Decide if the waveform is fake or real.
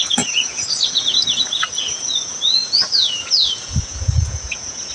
fake